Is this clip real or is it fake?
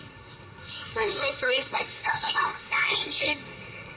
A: fake